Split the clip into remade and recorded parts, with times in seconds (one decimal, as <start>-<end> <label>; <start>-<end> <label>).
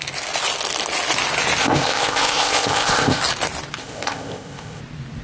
0.0-1.6 recorded; 1.6-3.2 remade; 3.2-3.8 recorded; 3.8-4.8 remade; 4.8-5.2 recorded